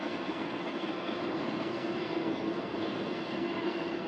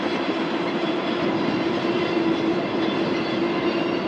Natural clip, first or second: second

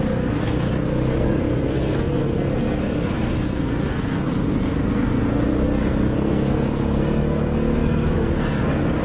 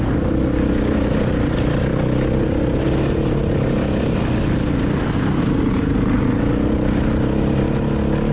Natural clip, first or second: second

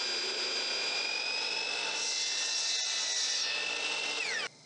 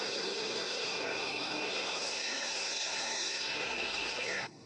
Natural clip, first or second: first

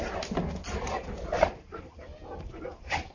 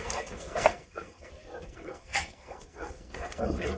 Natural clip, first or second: first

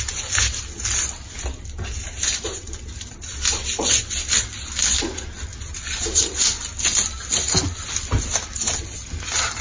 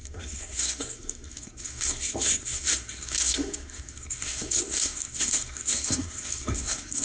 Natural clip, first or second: first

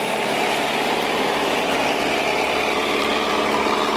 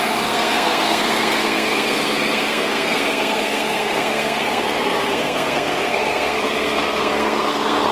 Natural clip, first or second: first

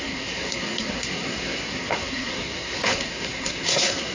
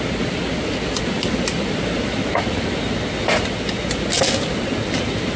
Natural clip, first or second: second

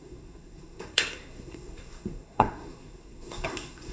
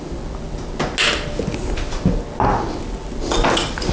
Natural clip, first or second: second